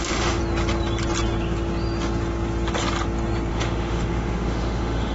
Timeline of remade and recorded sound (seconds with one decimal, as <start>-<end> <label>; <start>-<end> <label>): 0.0-0.4 remade; 0.4-3.5 recorded; 3.5-5.1 remade